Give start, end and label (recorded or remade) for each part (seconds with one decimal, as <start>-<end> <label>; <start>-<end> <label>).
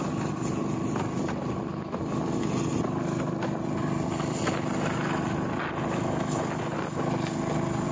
0.0-7.9 recorded